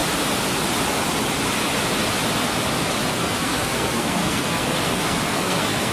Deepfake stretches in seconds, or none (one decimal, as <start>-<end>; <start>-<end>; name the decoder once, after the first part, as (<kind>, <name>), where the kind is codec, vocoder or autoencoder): 3.1-5.9 (codec, SNAC)